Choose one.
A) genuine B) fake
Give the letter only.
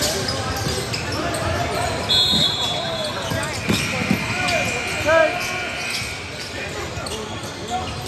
A